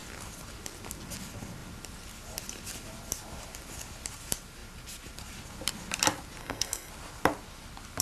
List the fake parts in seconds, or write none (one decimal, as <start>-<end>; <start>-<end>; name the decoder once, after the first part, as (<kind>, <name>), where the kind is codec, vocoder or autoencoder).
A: 6.4-6.9 (codec, SNAC)